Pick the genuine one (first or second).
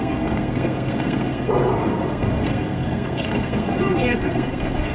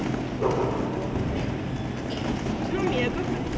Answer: second